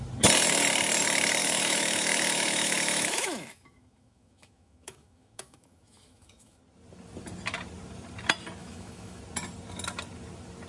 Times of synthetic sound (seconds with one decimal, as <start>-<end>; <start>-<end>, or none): 1.4-6.6; 8.6-9.2

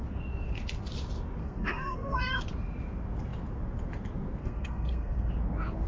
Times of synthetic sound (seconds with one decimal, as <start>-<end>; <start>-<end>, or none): 1.4-2.4; 4.4-5.3

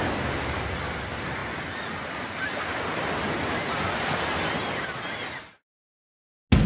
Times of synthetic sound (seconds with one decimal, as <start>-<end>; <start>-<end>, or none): none